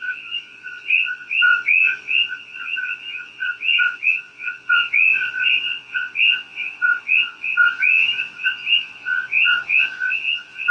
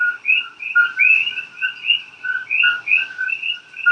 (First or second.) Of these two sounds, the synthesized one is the first